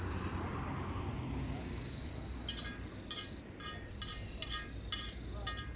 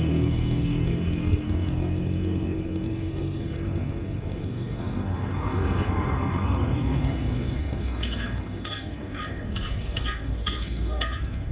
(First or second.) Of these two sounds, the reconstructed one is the second